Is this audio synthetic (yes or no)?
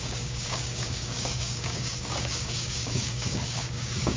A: yes